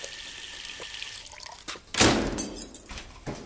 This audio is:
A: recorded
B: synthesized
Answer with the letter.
A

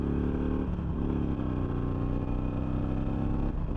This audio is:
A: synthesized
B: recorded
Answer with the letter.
B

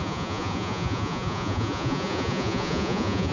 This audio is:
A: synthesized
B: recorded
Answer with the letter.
A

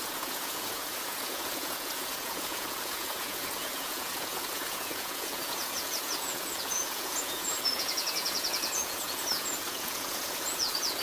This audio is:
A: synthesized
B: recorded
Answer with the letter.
A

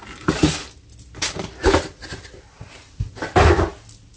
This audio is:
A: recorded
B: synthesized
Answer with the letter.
A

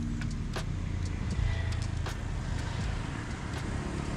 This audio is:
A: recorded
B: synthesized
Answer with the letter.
A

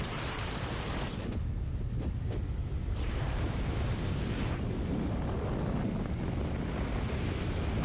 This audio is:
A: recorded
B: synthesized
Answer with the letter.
A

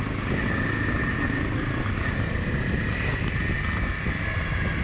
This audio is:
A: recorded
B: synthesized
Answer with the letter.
A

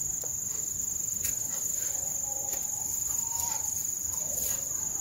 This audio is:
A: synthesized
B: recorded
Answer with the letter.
A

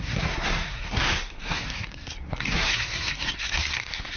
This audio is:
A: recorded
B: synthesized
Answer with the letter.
B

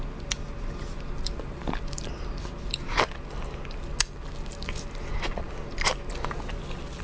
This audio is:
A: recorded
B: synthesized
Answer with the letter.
A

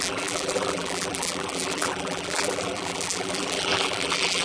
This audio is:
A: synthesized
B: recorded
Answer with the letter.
A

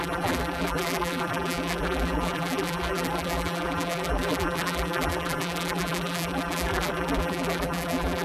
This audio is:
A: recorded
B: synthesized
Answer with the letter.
B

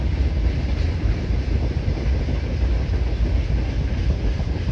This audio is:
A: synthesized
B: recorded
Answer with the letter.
B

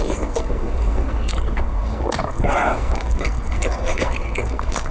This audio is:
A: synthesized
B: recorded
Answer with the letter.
A